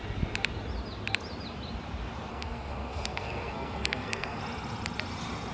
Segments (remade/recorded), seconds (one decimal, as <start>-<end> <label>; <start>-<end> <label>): 0.0-2.3 recorded; 2.3-4.4 remade; 4.4-5.5 recorded